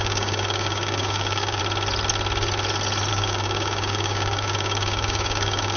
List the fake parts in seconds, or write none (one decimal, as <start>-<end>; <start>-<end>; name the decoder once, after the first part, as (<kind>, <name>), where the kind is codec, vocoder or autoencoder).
0.0-1.6 (codec, DAC); 3.1-5.8